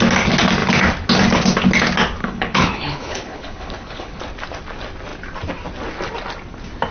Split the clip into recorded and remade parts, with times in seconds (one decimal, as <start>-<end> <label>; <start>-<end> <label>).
0.0-2.2 recorded; 2.2-4.2 remade; 4.2-6.9 recorded